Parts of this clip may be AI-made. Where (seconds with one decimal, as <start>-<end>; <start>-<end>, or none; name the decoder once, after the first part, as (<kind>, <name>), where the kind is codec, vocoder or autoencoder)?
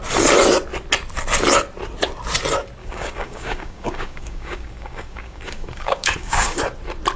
2.8-6.6 (codec, DAC)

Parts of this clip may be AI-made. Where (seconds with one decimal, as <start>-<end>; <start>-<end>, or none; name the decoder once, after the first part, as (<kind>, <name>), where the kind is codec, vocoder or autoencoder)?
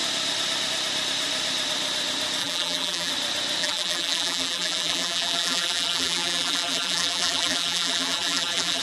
2.4-3.1 (vocoder, BigVGAN v2); 3.6-8.8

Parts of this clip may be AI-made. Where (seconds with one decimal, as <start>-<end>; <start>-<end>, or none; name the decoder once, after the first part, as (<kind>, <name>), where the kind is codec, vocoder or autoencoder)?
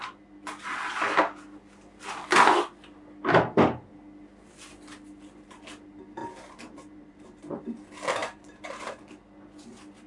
6.2-7.4 (vocoder, BigVGAN v2); 8.2-9.0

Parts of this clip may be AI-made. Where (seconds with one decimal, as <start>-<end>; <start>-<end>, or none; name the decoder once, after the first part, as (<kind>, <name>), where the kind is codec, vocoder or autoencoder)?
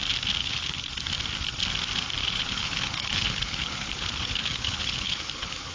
0.4-0.9 (codec, HILCodec); 2.2-5.7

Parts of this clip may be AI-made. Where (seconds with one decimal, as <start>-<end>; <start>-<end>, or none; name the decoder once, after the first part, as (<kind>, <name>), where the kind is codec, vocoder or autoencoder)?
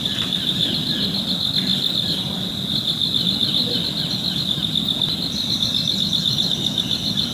none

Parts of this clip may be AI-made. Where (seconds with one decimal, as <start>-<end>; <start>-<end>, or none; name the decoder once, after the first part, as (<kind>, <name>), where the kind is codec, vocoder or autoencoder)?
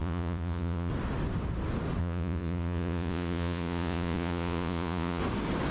0.0-0.9 (vocoder, Vocos); 2.0-5.2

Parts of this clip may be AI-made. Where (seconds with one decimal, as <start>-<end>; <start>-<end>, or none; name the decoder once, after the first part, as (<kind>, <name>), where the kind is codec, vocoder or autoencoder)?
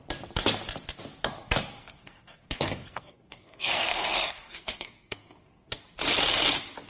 1.7-5.8 (codec, SNAC)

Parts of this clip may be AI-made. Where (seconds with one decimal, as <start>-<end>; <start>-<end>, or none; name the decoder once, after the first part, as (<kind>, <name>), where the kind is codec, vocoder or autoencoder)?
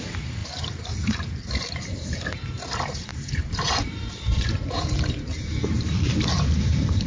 0.0-7.1 (vocoder, BigVGAN v2)